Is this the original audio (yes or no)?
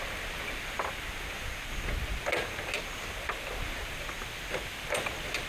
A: yes